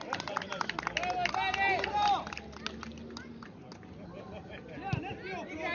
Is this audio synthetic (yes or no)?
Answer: no